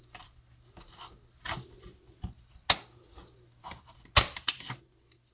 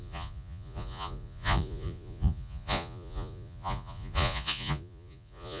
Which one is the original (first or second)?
first